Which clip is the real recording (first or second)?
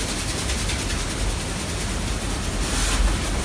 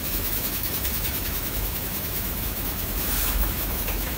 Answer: first